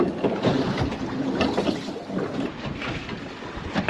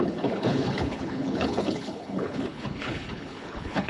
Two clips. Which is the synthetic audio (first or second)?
second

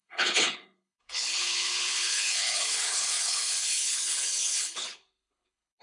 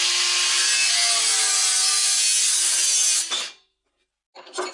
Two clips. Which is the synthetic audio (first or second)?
first